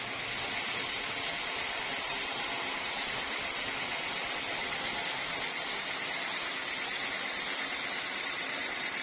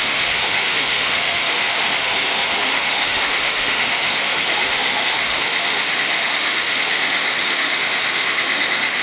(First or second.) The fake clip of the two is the second